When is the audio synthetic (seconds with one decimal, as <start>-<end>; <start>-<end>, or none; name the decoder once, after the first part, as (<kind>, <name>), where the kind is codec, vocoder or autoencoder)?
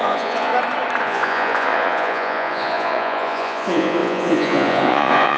0.0-0.5 (vocoder, Vocos); 1.0-5.4